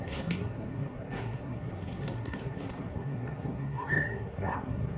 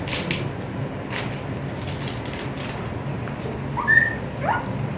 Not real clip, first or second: first